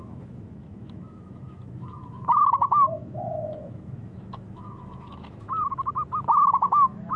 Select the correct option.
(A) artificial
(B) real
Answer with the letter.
A